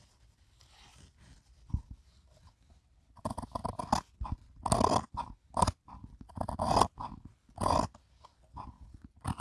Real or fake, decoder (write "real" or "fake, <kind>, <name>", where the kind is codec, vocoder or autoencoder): real